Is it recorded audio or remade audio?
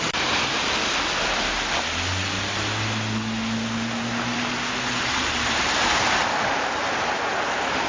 recorded